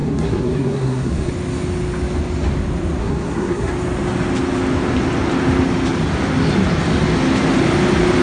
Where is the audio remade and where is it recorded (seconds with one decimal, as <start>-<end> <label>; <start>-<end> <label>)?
0.0-1.3 remade; 1.3-3.0 recorded; 3.0-3.7 remade; 3.7-8.2 recorded